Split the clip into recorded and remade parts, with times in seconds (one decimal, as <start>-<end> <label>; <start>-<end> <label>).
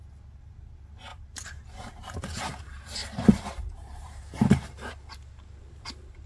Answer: 0.0-1.1 recorded; 1.1-4.9 remade; 4.9-6.3 recorded